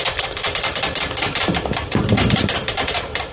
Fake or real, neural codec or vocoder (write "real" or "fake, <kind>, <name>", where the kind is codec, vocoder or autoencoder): fake, vocoder, BigVGAN v2